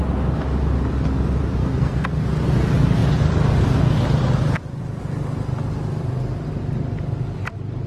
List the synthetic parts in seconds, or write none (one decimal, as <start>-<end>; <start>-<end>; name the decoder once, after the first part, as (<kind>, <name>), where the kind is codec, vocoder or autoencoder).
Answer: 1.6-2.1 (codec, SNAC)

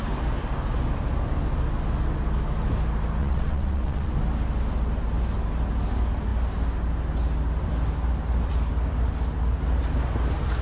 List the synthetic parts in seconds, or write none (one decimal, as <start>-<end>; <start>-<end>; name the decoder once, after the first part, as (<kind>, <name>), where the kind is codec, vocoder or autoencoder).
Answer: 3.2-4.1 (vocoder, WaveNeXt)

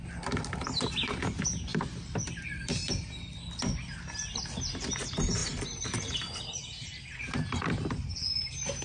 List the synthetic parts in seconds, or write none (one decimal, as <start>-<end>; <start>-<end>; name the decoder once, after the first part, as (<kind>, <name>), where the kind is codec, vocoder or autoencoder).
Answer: none